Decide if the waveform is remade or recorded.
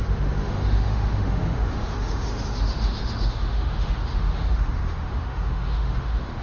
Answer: remade